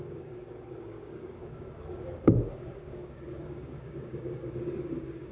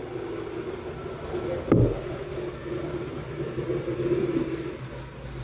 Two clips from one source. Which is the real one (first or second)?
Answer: second